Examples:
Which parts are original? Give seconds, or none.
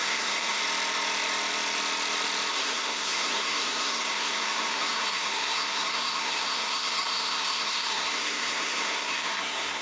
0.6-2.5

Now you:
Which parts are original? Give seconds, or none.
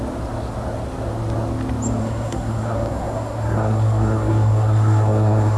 0.0-2.0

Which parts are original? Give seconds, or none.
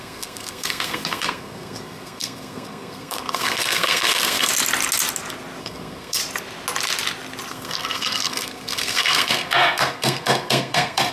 4.5-5.6; 6.2-7.5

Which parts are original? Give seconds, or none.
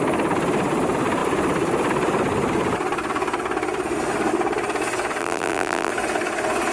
0.0-5.2; 5.9-6.7